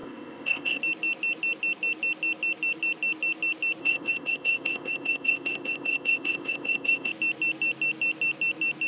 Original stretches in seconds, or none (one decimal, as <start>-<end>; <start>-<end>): 0.8-3.8; 7.1-8.9